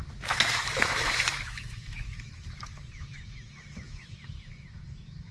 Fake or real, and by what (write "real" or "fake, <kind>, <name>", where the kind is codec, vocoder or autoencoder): fake, autoencoder, DAC-VAE